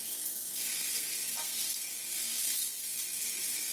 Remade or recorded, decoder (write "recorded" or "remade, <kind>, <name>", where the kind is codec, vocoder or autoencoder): remade, codec, SNAC